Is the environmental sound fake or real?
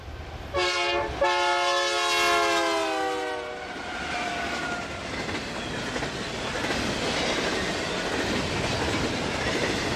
real